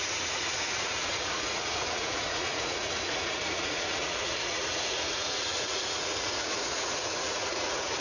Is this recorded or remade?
remade